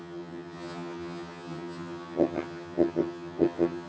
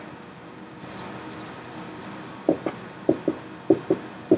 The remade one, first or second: first